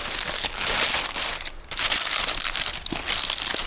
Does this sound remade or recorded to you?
recorded